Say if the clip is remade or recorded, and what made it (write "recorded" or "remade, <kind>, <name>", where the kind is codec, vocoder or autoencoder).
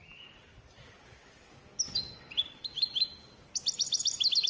recorded